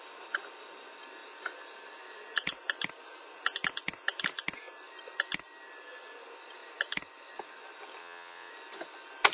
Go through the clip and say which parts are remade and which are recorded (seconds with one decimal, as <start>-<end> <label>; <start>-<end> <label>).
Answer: 0.0-8.0 recorded; 8.0-8.5 remade; 8.5-9.3 recorded